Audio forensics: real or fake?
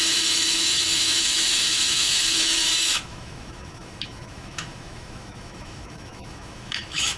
fake